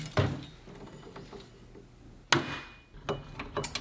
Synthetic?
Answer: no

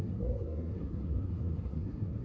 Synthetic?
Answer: yes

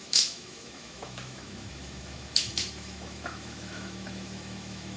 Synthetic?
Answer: yes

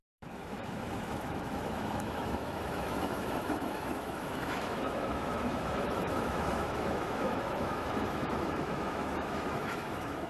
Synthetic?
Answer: yes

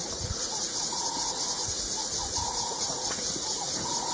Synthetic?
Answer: yes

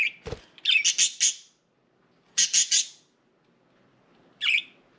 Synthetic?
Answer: no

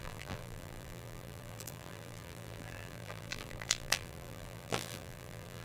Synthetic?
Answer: yes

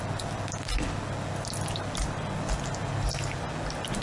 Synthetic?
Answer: no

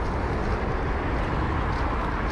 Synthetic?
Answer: no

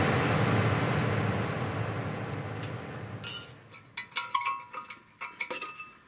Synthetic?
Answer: no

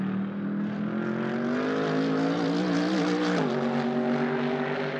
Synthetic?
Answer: no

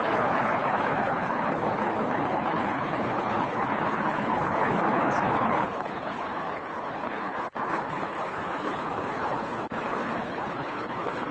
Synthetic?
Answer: yes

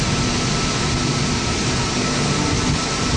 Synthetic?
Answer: no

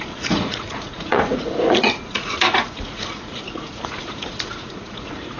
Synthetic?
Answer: yes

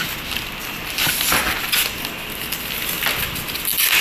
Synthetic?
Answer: no